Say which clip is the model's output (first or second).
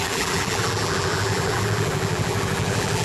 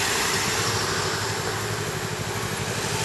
first